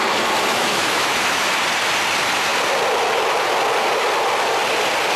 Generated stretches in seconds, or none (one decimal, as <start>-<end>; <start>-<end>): 0.5-1.5